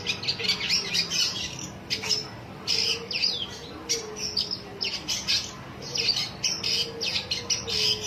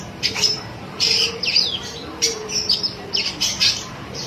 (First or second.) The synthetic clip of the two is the second